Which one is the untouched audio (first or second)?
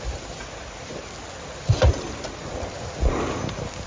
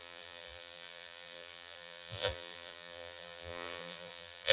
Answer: first